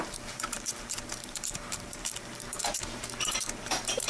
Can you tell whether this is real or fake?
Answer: fake